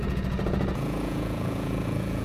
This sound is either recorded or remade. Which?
remade